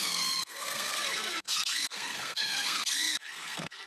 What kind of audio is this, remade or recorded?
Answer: remade